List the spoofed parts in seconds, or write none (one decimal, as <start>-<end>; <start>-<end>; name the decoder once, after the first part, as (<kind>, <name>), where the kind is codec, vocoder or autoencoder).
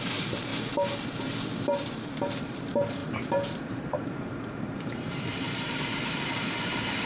0.0-0.5 (vocoder, BigVGAN v2); 1.8-7.1